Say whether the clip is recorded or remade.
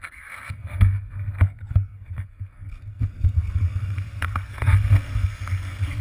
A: remade